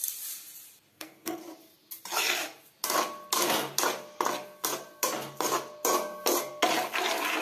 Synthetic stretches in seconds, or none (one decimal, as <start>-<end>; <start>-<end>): 0.9-1.4